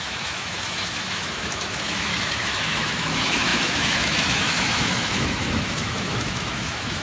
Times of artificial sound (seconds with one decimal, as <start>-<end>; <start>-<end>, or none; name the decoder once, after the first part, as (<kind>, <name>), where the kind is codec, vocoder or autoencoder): 0.0-7.0 (autoencoder, DAC-VAE)